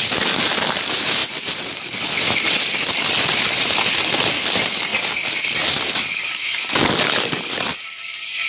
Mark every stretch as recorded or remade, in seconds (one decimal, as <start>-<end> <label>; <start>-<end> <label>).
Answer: 0.0-4.9 remade; 4.9-6.4 recorded; 6.4-8.5 remade